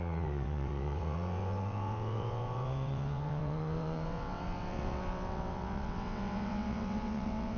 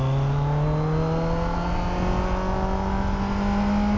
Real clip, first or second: second